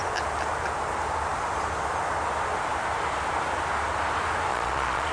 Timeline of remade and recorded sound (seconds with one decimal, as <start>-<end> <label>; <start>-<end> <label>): 0.0-4.5 recorded; 4.5-5.1 remade